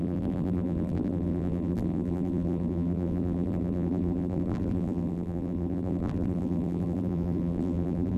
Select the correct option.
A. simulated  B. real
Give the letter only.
A